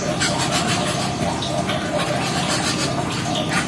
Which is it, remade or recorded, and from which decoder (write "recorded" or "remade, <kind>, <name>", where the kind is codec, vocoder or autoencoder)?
recorded